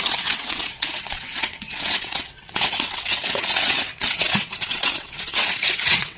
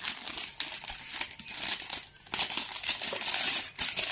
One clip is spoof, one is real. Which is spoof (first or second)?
first